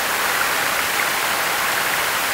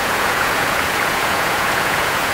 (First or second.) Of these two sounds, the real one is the first